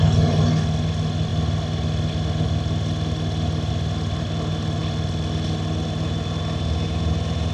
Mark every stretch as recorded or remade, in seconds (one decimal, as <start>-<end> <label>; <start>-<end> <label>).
0.0-7.5 recorded